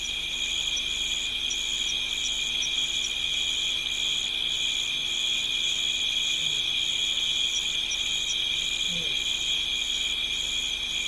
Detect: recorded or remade recorded